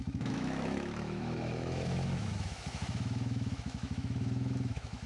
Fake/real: fake